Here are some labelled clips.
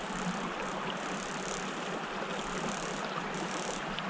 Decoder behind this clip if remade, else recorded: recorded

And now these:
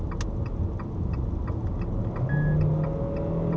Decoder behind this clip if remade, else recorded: recorded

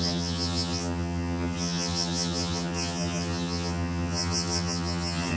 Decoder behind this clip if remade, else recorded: remade, vocoder, HiFi-GAN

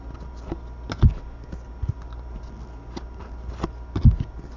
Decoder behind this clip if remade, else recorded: recorded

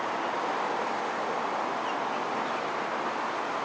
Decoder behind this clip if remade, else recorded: recorded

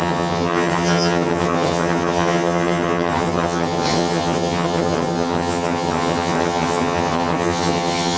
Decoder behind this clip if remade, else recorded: remade, vocoder, HiFi-GAN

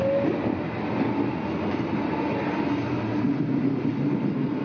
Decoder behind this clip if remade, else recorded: recorded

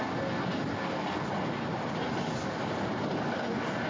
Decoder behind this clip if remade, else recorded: recorded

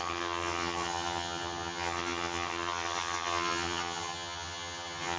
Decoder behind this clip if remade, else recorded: remade, vocoder, HiFi-GAN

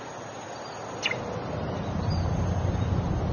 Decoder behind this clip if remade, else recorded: recorded